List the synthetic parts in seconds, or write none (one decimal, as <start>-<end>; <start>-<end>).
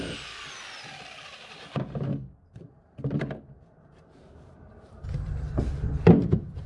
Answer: 2.1-6.1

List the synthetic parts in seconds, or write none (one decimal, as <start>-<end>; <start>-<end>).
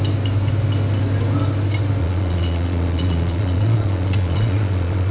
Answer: 2.0-5.1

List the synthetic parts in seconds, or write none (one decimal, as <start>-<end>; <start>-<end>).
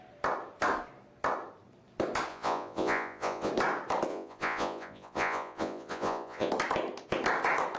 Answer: 2.3-3.5; 4.1-6.5